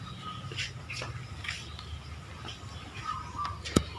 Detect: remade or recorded recorded